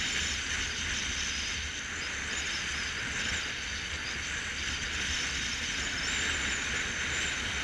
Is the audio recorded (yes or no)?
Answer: yes